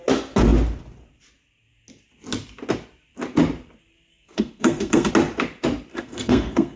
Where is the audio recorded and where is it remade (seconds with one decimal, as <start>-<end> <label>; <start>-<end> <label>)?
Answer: 0.0-4.1 recorded; 4.1-5.1 remade; 5.1-5.9 recorded; 5.9-6.8 remade